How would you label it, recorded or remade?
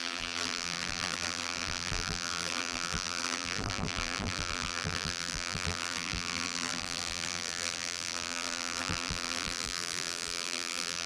remade